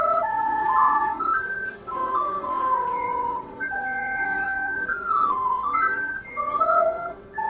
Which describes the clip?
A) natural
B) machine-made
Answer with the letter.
B